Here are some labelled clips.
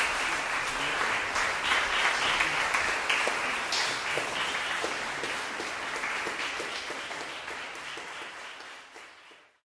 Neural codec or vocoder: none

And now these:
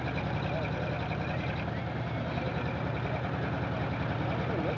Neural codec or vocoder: none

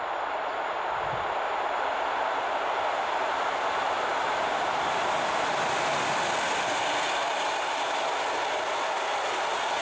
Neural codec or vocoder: none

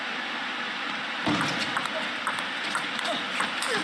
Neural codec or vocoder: vocoder, BigVGAN v2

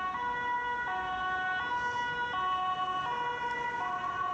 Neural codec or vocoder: none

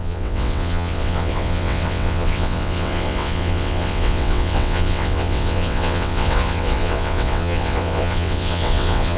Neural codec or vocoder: vocoder, WaveNeXt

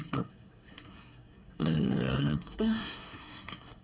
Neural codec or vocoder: codec, SNAC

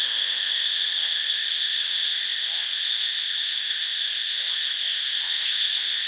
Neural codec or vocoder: codec, ZipCodec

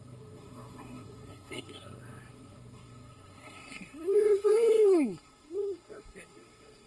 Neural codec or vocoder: codec, SNAC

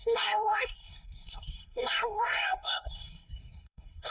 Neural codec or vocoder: codec, SNAC